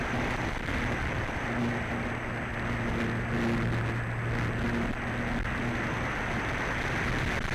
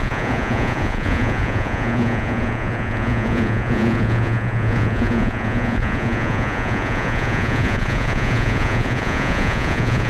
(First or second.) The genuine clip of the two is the first